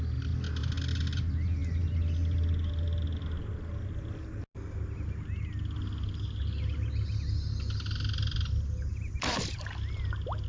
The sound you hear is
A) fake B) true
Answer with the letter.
B